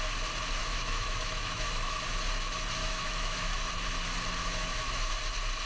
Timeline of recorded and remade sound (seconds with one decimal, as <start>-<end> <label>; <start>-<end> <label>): 0.0-0.6 recorded; 0.6-2.0 remade; 2.0-2.8 recorded; 2.8-3.7 remade; 3.7-4.4 recorded; 4.4-5.1 remade; 5.1-5.7 recorded

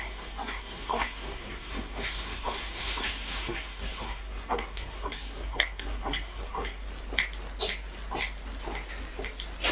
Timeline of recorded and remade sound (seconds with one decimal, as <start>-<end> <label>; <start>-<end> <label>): 0.0-6.8 remade; 6.8-9.7 recorded

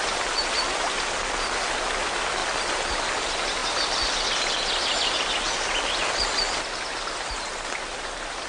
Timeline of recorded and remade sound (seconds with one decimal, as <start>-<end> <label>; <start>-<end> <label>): 0.0-8.5 recorded

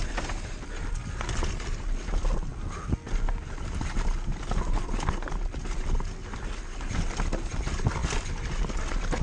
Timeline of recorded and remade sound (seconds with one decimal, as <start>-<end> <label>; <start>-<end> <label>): 0.0-9.2 recorded

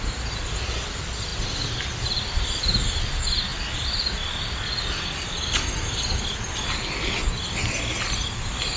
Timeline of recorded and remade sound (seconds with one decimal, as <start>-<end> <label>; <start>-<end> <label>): 0.0-8.8 recorded